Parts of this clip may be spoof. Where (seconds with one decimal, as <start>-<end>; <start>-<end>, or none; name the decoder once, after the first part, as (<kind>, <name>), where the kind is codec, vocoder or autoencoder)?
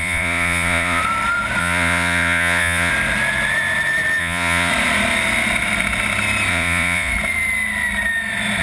0.0-1.0 (vocoder, Vocos); 1.6-2.9; 4.2-4.7; 6.5-7.1